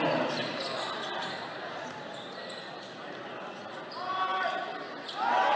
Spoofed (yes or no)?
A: no